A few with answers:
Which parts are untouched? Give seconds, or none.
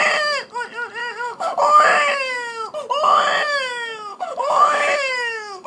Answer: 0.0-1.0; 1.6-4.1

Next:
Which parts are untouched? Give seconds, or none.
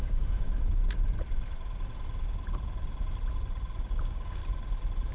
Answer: 0.8-3.9; 4.4-5.1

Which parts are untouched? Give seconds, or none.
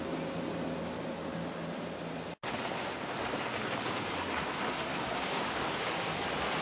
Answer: 0.0-4.9; 6.0-6.6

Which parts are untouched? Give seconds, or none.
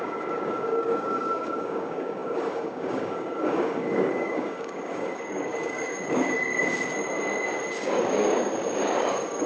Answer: 6.5-7.7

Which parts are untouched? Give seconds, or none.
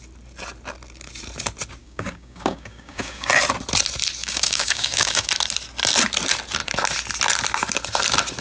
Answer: 0.0-1.8; 3.3-4.2; 5.3-8.4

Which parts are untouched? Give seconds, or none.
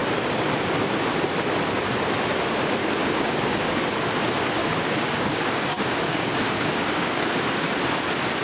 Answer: 0.0-2.8; 3.9-4.6; 7.7-8.4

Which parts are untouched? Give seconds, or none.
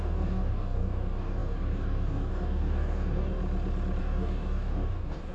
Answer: 3.4-4.0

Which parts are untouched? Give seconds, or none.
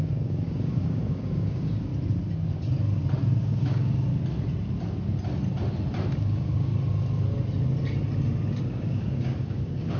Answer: 1.9-3.4; 4.1-6.2; 6.7-8.6